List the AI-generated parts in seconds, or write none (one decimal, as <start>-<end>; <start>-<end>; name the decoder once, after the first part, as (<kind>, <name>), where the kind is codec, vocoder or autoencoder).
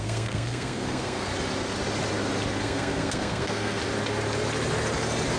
0.0-1.3 (codec, SNAC); 2.6-3.8